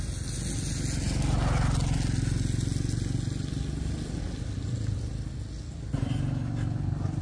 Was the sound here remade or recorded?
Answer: recorded